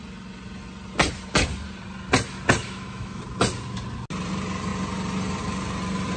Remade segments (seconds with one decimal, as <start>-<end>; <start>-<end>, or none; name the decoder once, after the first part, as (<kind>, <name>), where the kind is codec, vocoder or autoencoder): 2.6-3.2 (autoencoder, DAC-VAE)